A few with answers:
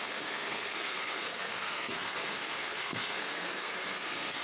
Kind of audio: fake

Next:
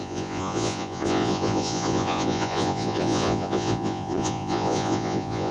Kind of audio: fake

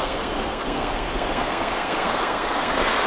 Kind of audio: fake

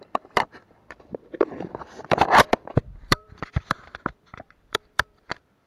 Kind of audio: fake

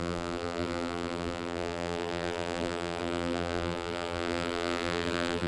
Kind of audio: fake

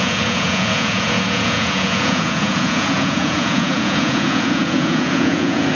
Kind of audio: fake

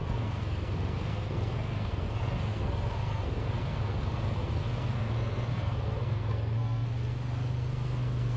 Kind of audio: fake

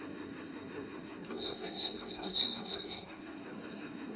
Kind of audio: fake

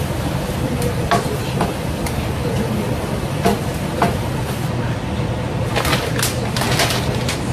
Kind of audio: real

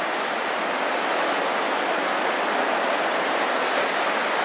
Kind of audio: real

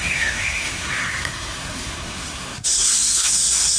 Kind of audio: fake